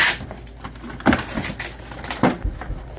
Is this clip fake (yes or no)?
no